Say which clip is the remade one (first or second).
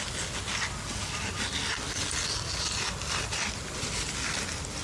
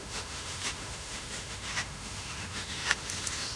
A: second